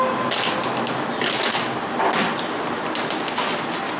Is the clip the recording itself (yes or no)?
yes